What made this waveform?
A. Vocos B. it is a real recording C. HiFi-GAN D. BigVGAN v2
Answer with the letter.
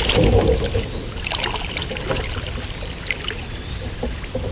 B